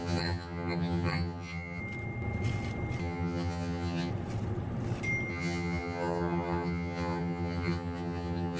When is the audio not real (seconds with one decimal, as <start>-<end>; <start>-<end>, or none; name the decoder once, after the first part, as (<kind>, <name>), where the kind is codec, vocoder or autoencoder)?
0.0-1.8 (vocoder, HiFi-GAN); 3.0-4.1; 5.3-8.6